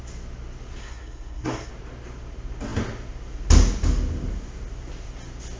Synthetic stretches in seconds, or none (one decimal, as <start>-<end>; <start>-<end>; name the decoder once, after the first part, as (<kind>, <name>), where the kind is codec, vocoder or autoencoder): 0.8-1.7 (codec, SNAC)